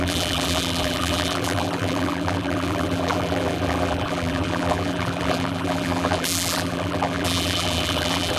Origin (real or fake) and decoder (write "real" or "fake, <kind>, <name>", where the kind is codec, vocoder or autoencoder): fake, vocoder, BigVGAN v2